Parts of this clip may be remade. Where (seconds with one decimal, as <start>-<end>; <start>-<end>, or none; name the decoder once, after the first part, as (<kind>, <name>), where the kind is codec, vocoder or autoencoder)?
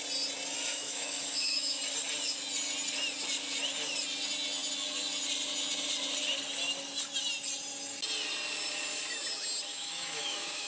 0.7-1.8 (autoencoder, DAC-VAE); 9.7-10.7